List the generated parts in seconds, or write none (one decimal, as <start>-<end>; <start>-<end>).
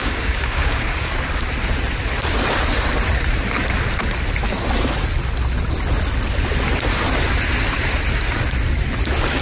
0.0-1.1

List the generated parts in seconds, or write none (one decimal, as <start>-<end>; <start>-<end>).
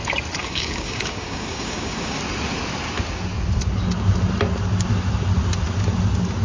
0.4-2.2